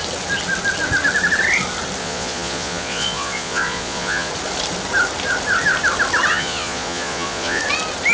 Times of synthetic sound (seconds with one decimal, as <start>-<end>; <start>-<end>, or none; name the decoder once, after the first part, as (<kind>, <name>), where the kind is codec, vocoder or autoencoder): 2.0-4.3 (vocoder, Vocos); 6.3-7.6